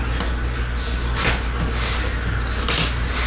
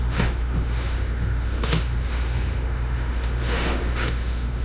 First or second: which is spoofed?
second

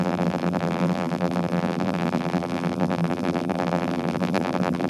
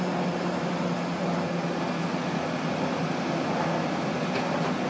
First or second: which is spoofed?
first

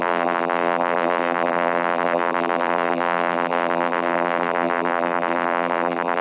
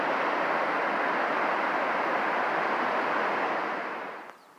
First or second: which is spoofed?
first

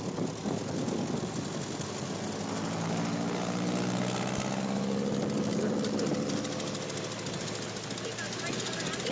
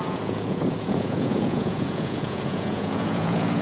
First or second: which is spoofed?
second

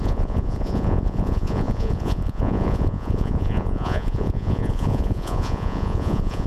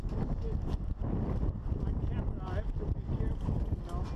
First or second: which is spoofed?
first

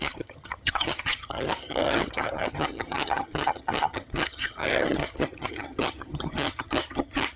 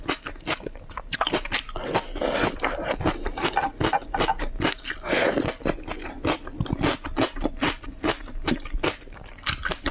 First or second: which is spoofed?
first